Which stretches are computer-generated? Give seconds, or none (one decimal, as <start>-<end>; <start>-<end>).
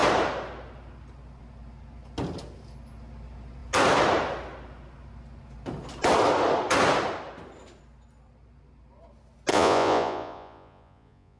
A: 9.5-11.4